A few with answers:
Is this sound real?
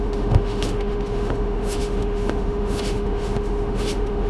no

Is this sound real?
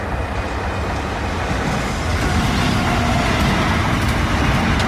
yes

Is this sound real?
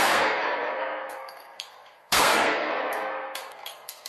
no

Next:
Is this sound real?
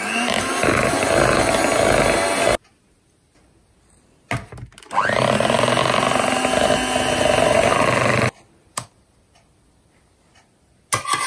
yes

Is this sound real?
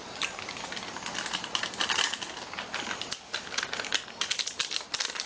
yes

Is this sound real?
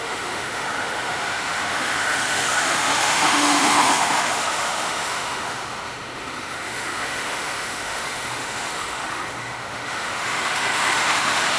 no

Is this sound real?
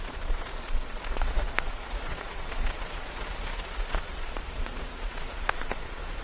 no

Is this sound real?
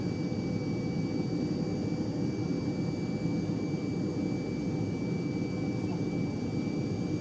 yes